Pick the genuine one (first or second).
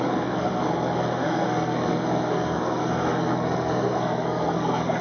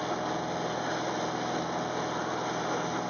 second